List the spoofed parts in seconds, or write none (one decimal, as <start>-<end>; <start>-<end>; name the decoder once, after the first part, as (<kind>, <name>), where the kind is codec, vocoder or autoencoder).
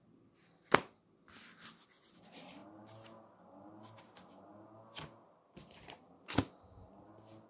none